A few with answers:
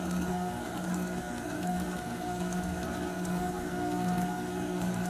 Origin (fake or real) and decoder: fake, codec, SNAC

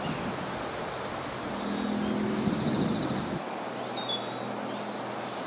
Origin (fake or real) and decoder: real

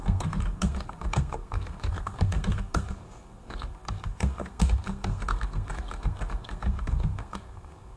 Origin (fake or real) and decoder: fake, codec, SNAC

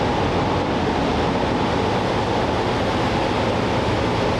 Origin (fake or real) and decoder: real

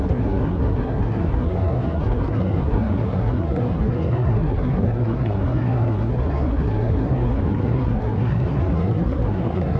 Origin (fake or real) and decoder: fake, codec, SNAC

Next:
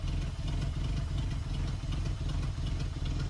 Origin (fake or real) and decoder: real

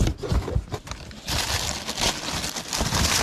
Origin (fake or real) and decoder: real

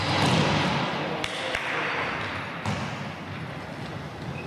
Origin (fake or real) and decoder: real